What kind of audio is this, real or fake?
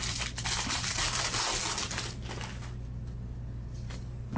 real